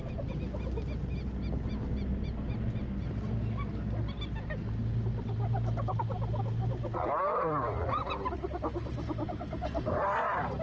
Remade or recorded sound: recorded